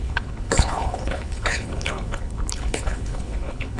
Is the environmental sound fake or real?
fake